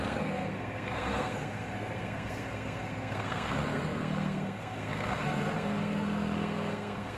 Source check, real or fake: fake